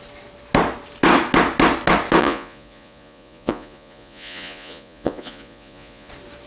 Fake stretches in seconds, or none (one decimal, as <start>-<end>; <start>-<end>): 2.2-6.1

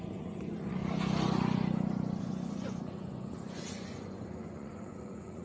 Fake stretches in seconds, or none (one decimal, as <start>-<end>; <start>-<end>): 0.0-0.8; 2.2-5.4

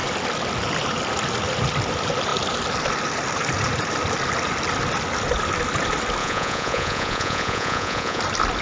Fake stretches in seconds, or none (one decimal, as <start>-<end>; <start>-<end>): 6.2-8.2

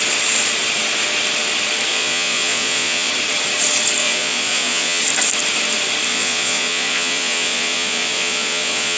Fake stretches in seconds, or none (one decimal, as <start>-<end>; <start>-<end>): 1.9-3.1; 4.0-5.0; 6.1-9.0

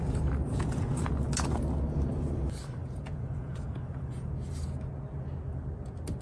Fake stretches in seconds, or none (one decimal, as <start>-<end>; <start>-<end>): 0.5-1.1; 2.8-4.3